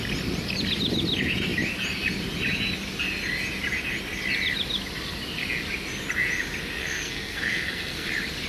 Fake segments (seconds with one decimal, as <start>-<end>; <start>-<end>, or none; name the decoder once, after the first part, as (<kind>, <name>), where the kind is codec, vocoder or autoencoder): 6.8-8.1 (codec, SNAC)

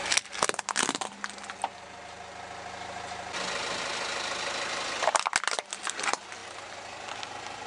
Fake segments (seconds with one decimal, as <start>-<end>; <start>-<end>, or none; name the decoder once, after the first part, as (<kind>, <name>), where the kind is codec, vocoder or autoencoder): none